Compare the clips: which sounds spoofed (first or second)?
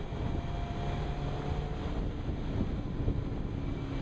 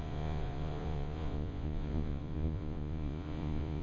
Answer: second